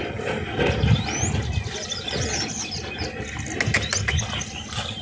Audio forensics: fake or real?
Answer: real